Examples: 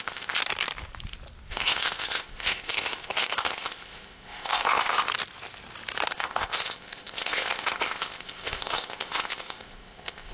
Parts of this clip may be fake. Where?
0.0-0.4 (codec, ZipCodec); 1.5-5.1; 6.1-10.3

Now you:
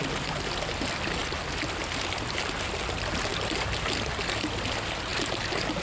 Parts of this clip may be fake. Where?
none

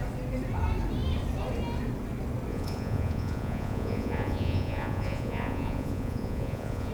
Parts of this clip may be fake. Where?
2.5-6.9 (vocoder, Vocos)

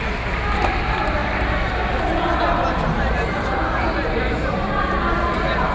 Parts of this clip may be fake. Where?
none

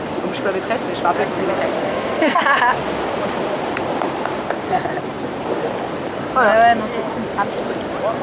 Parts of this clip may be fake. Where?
1.8-2.4 (codec, SNAC)

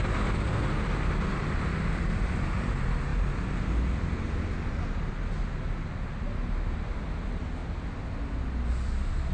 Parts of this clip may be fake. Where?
none

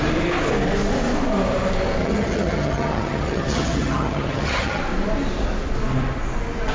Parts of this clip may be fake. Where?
2.0-4.8 (vocoder, HiFi-GAN)

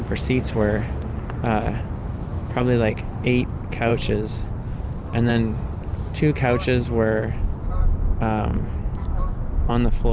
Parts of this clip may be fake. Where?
2.0-2.6 (autoencoder, DAC-VAE); 8.5-9.7